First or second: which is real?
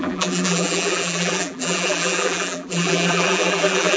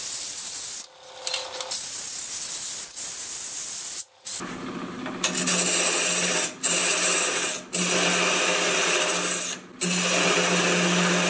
second